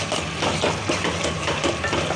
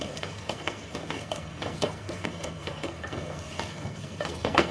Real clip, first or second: first